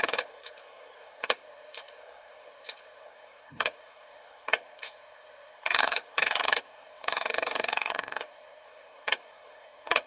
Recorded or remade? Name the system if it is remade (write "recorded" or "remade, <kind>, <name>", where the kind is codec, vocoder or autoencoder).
remade, codec, SNAC